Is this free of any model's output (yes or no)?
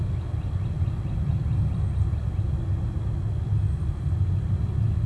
yes